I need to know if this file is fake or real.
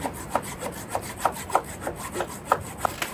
real